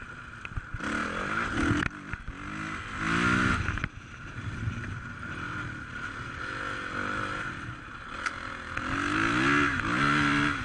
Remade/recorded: recorded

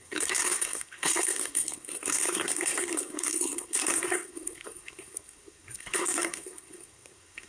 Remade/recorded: remade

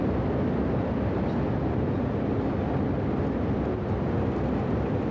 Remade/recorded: recorded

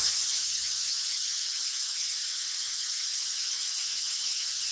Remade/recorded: remade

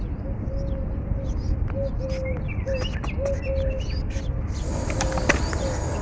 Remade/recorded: recorded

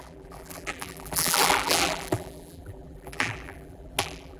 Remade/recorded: remade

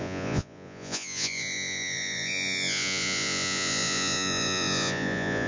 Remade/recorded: remade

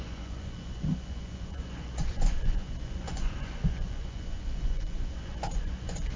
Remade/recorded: remade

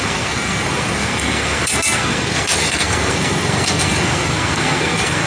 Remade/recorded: remade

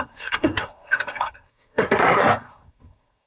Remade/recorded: remade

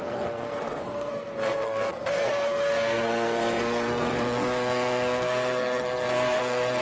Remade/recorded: remade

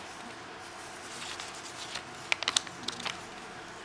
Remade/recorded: recorded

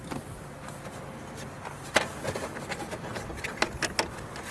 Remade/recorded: recorded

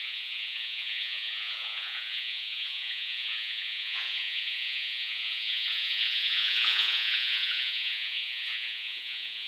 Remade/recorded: remade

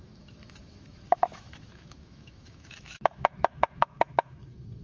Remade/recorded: remade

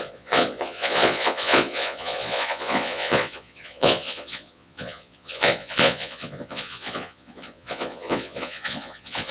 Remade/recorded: remade